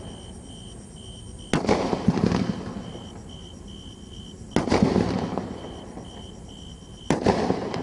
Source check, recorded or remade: recorded